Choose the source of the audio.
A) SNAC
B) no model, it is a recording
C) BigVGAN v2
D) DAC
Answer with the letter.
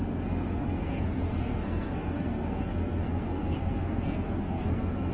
A